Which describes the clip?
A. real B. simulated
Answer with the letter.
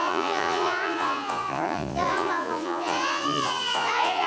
B